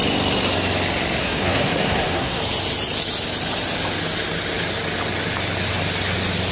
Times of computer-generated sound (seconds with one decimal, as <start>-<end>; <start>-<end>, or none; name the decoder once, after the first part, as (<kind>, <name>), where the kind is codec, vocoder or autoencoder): 1.2-2.4 (codec, SNAC)